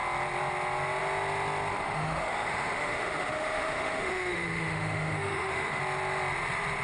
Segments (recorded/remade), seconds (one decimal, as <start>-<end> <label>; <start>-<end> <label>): 0.0-1.7 recorded; 1.7-5.8 remade; 5.8-6.8 recorded